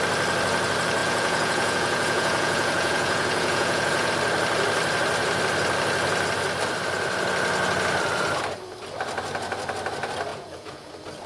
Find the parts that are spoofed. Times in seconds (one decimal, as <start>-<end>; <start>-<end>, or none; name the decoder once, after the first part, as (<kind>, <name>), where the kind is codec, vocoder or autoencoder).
1.0-4.1 (vocoder, Vocos); 10.3-10.9